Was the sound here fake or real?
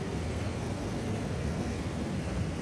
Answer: fake